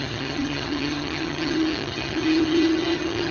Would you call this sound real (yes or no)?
no